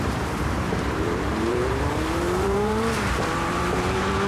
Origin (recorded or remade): remade